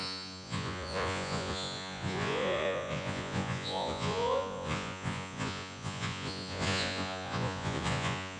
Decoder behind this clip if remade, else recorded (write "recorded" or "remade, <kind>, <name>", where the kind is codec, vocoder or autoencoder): remade, vocoder, Vocos